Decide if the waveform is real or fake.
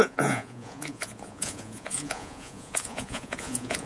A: fake